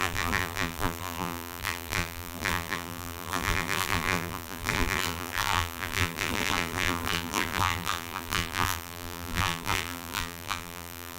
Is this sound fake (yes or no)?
yes